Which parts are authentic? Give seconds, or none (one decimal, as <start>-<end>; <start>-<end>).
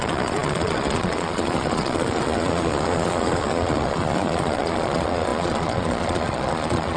none